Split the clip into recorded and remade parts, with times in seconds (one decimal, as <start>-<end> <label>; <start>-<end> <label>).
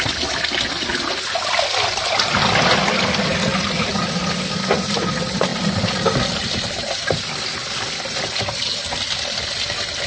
0.0-10.1 recorded